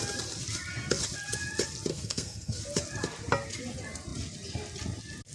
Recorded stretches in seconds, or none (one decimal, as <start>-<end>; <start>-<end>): 0.0-1.9; 2.6-5.3